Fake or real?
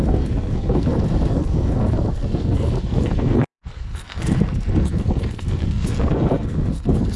fake